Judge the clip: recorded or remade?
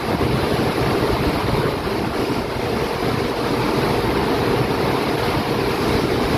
remade